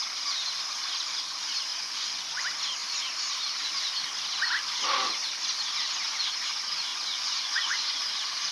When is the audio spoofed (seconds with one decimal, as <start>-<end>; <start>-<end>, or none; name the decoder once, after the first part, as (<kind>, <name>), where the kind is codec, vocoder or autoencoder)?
1.7-2.4 (vocoder, Vocos); 6.9-8.0